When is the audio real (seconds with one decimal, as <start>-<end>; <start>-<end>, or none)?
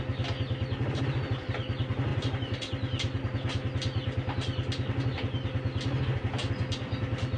0.0-7.4